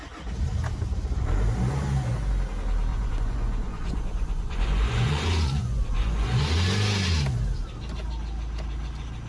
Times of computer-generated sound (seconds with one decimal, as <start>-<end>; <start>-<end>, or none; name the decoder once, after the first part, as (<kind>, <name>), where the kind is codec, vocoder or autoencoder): 2.9-6.5 (vocoder, Vocos)